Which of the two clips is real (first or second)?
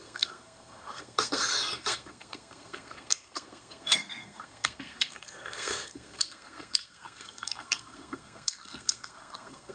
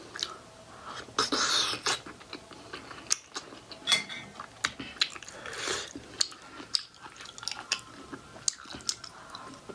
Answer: second